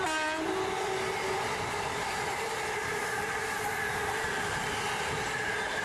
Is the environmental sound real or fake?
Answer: real